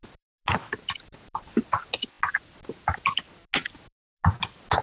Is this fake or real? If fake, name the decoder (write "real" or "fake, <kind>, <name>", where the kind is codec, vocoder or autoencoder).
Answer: real